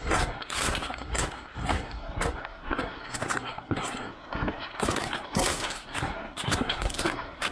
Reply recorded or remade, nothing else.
remade